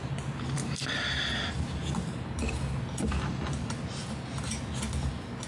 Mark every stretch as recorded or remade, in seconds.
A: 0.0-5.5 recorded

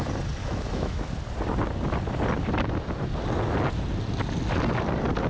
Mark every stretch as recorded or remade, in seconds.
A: 0.0-0.4 recorded; 0.4-1.1 remade; 1.1-5.3 recorded

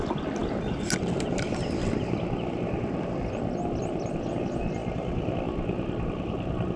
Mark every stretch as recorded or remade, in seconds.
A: 0.0-6.8 recorded

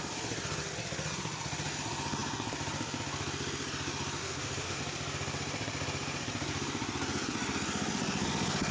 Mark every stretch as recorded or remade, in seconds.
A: 0.0-4.2 recorded; 4.2-4.8 remade; 4.8-8.7 recorded

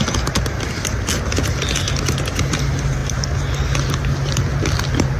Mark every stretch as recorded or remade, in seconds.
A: 0.0-5.2 recorded

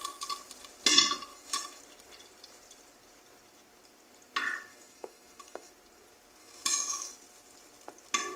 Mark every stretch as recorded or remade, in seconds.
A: 0.0-1.3 recorded; 1.3-1.8 remade; 1.8-4.7 recorded; 4.7-5.7 remade; 5.7-6.4 recorded; 6.4-7.1 remade; 7.1-8.4 recorded

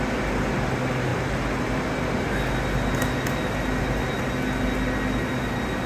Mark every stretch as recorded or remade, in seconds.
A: 0.0-5.9 recorded

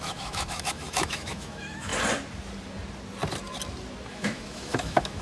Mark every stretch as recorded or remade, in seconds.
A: 0.0-1.9 remade; 1.9-4.1 recorded; 4.1-5.2 remade